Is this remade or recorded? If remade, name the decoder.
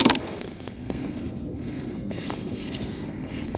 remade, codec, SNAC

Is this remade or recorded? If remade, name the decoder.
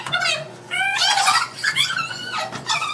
remade, vocoder, Vocos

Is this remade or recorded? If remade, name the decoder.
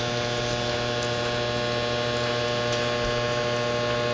recorded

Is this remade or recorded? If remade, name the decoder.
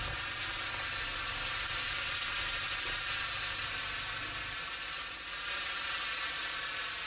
recorded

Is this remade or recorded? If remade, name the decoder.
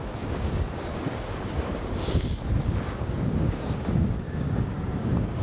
remade, codec, DAC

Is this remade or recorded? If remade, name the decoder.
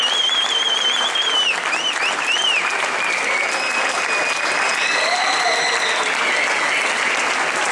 recorded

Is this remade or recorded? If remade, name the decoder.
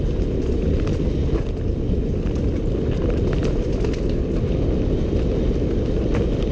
recorded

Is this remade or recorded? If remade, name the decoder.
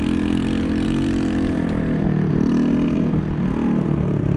recorded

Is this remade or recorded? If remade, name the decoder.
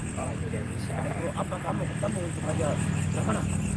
recorded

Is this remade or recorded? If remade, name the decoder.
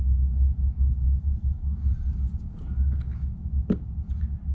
recorded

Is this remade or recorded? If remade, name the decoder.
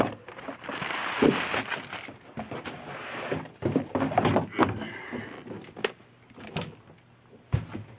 recorded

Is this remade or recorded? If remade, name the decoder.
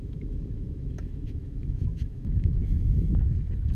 remade, autoencoder, DAC-VAE